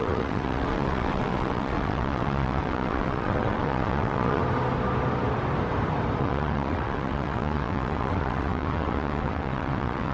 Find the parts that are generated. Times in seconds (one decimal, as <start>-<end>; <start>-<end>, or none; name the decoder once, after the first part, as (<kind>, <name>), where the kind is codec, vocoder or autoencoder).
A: 0.0-4.4 (vocoder, WaveNeXt); 6.2-10.1